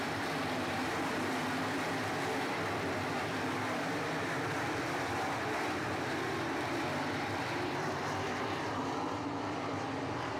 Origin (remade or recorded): remade